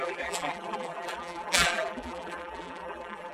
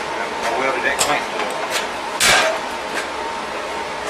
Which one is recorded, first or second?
second